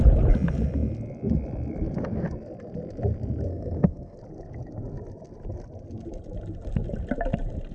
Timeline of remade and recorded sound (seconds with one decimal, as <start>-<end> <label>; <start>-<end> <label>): 0.0-3.5 recorded; 3.5-4.2 remade; 4.2-7.7 recorded